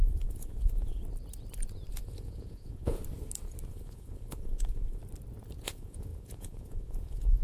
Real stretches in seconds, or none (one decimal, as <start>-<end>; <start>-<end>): 1.0-1.9; 3.0-3.7; 5.0-5.6